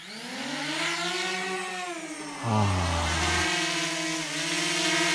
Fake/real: real